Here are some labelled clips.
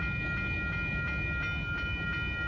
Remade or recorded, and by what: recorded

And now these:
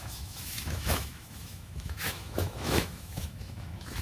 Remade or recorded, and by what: remade, autoencoder, DAC-VAE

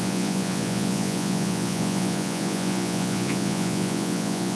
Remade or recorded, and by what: remade, vocoder, Vocos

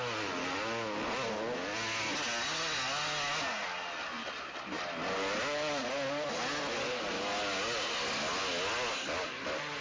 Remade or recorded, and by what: recorded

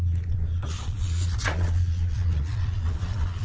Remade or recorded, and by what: remade, vocoder, Vocos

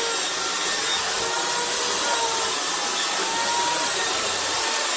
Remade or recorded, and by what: recorded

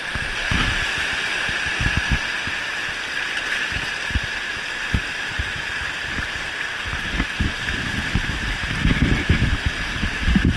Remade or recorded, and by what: recorded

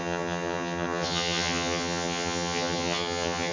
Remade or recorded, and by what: remade, vocoder, HiFi-GAN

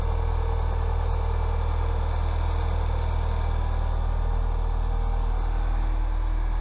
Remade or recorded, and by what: recorded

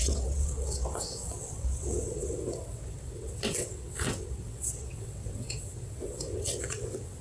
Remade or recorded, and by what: remade, vocoder, WaveNeXt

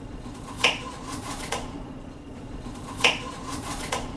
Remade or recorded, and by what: remade, vocoder, Vocos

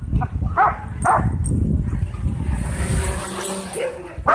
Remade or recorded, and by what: remade, vocoder, BigVGAN v2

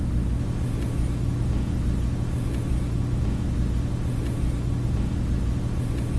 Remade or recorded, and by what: recorded